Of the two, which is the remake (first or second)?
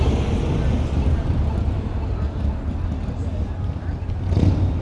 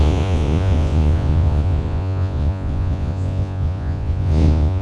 second